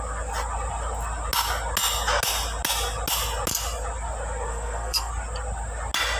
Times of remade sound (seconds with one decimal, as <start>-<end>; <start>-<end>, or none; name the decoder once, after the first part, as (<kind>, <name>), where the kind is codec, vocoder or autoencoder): 4.5-5.1 (codec, SNAC)